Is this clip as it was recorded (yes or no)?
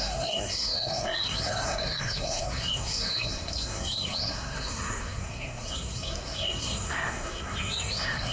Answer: no